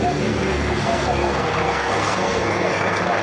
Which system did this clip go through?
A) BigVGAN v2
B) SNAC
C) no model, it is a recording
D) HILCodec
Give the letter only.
B